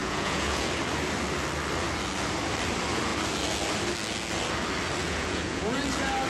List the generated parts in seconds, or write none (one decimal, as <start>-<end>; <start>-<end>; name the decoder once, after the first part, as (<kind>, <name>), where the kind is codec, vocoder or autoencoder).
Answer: 0.0-0.7 (vocoder, Vocos); 5.0-5.8